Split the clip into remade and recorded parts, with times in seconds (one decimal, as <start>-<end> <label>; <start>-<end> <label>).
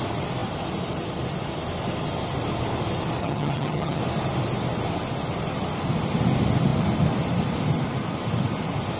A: 0.0-3.2 recorded; 3.2-4.0 remade; 4.0-9.0 recorded